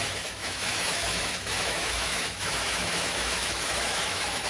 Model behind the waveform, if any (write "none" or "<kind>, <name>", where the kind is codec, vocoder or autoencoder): autoencoder, DAC-VAE